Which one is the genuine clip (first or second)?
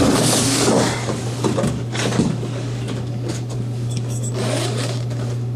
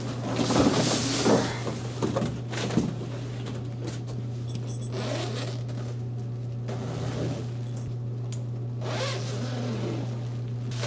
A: second